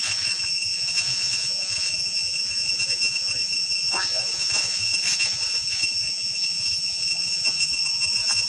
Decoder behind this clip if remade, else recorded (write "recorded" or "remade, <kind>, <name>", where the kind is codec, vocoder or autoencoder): remade, vocoder, Vocos